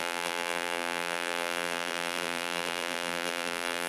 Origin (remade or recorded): remade